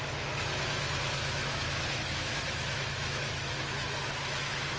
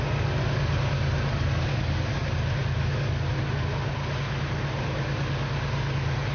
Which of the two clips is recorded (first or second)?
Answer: second